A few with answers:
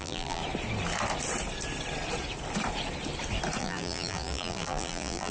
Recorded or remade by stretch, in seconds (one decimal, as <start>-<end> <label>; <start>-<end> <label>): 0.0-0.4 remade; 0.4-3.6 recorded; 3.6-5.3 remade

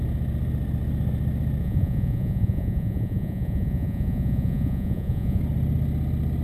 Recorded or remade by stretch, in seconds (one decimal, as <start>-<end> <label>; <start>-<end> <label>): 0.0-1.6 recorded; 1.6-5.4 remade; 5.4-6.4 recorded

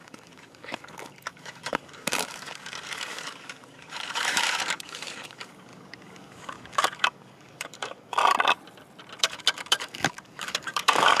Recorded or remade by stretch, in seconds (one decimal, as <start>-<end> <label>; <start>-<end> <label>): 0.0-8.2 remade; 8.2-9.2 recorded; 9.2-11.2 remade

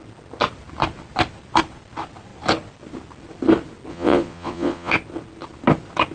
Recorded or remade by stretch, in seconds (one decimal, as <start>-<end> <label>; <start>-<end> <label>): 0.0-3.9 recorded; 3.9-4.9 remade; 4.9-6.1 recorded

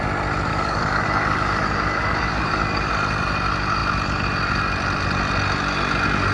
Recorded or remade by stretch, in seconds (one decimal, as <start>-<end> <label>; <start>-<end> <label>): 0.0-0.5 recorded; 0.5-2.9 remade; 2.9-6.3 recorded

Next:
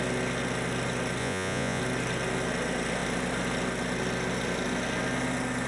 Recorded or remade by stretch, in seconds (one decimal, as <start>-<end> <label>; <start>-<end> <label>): 0.0-1.2 recorded; 1.2-1.8 remade; 1.8-5.7 recorded

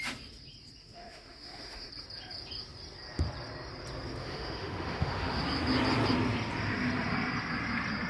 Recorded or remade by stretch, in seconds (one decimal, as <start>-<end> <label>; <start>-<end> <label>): 0.0-0.8 recorded; 0.8-1.9 remade; 1.9-4.2 recorded; 4.2-5.4 remade; 5.4-8.1 recorded